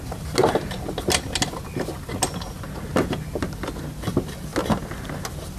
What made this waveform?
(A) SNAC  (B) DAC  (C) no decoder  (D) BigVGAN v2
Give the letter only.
C